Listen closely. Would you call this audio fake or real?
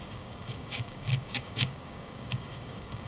fake